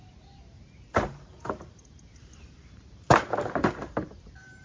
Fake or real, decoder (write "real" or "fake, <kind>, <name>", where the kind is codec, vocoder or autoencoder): fake, vocoder, BigVGAN v2